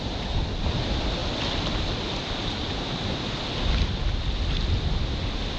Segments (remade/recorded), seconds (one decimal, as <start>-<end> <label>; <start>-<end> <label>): 0.0-5.6 recorded